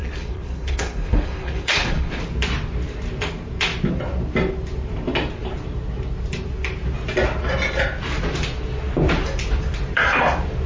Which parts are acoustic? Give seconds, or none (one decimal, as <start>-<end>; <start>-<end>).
2.2-10.7